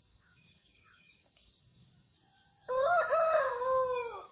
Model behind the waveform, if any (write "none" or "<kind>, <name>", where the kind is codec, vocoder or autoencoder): codec, DAC